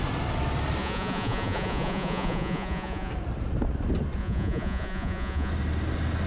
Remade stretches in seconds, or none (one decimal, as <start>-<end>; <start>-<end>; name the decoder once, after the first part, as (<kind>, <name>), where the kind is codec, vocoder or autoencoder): 0.8-3.1 (vocoder, Vocos); 4.2-5.5

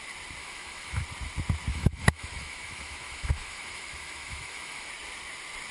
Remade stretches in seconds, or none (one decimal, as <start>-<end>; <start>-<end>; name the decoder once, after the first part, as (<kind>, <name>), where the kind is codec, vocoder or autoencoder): 0.4-1.0 (autoencoder, DAC-VAE); 1.7-4.9